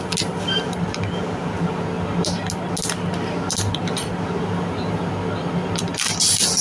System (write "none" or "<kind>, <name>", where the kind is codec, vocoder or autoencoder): none